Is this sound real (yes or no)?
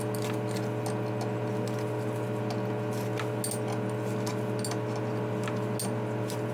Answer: yes